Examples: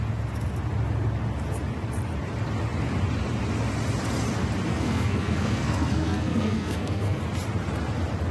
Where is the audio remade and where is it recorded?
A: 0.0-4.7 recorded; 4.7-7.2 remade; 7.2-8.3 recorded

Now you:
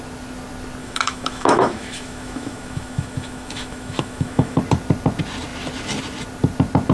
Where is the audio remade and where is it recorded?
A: 0.0-0.8 recorded; 0.8-4.6 remade; 4.6-6.9 recorded

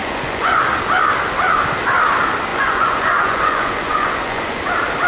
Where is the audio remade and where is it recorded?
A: 0.0-0.6 remade; 0.6-2.5 recorded; 2.5-4.6 remade; 4.6-5.1 recorded

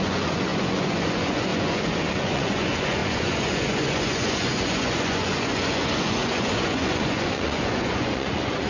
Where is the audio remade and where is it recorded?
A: 0.0-8.7 remade

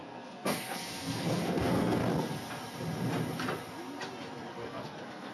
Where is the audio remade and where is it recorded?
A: 0.0-2.0 remade; 2.0-4.5 recorded; 4.5-5.3 remade

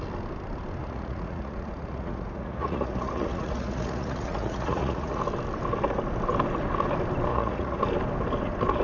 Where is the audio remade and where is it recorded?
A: 0.0-0.8 recorded; 0.8-5.2 remade; 5.2-7.3 recorded; 7.3-7.8 remade; 7.8-8.8 recorded

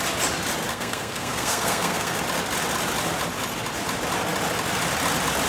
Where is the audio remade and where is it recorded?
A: 0.0-0.7 recorded; 0.7-2.2 remade; 2.2-5.5 recorded